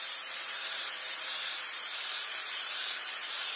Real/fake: fake